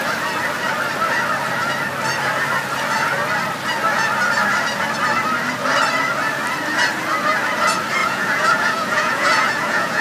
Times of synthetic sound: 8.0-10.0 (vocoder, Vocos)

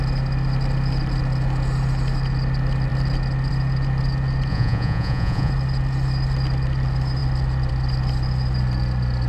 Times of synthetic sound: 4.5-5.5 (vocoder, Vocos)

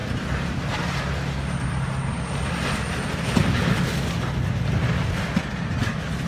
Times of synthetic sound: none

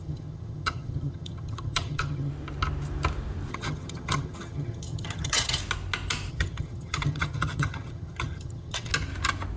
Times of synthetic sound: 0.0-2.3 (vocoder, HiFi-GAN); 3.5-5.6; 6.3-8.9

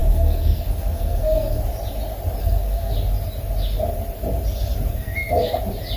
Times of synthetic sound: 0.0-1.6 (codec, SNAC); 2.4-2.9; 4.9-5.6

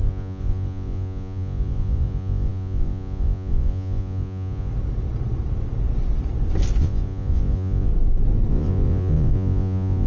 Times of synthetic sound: 0.0-4.7 (vocoder, Vocos); 6.8-7.9; 8.5-10.1

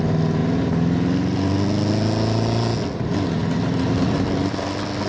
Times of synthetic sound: none